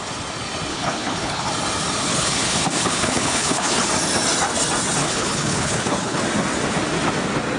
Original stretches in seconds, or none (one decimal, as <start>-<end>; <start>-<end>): 0.0-0.7; 1.5-2.1; 3.9-5.0; 6.2-7.6

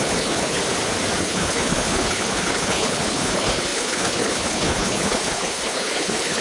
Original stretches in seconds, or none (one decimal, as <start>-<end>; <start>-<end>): 0.6-1.2

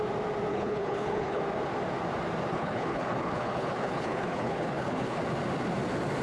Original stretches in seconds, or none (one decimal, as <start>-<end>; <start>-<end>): 0.0-0.5; 1.4-2.5; 5.2-6.2

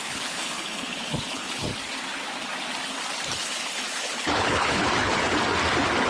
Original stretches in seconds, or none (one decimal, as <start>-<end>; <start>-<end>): 1.7-3.4; 5.1-6.1

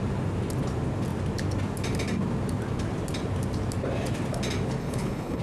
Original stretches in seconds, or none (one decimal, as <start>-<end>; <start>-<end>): 0.0-4.8

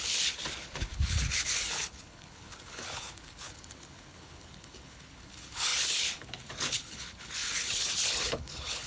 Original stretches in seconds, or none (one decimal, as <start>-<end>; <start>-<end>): none

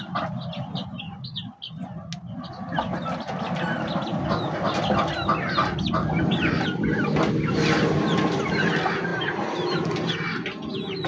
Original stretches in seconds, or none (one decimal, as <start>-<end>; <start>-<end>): 0.0-11.1